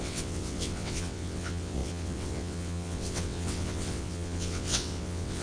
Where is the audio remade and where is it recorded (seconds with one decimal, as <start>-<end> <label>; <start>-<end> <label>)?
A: 0.0-5.4 remade